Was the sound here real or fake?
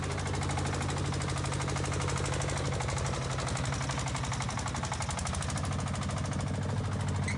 real